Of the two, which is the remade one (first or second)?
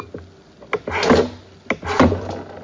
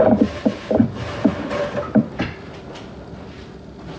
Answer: second